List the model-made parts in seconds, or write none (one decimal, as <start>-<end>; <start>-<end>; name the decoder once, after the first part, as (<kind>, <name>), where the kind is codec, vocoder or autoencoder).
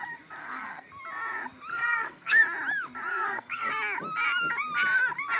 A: 0.4-0.9 (codec, SNAC); 1.7-2.4; 3.1-3.7